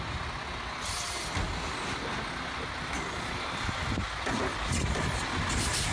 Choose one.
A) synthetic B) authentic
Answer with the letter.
B